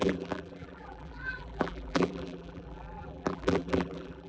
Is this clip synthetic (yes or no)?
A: yes